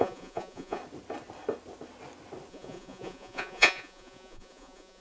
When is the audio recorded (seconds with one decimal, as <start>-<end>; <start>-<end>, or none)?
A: 0.8-2.5

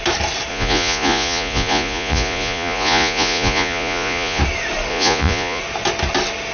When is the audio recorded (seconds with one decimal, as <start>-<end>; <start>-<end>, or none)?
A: 0.0-0.5; 4.4-4.9; 5.6-6.5

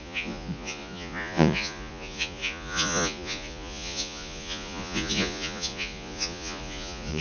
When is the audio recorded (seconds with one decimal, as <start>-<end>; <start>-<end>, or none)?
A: none

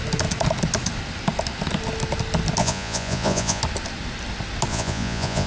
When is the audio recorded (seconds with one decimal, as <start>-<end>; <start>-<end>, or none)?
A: 0.0-2.6; 3.6-4.7

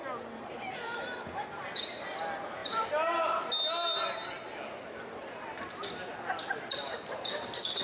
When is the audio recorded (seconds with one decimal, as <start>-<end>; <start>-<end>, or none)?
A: 0.0-7.8